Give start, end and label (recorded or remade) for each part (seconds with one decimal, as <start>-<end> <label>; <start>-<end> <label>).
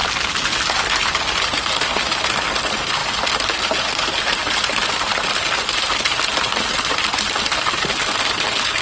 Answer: 0.0-8.8 recorded